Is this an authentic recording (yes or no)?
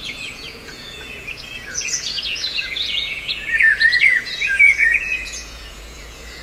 no